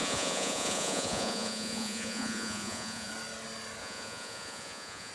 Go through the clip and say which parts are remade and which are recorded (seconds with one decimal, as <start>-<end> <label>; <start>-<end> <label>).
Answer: 0.0-3.1 remade; 3.1-3.8 recorded; 3.8-5.1 remade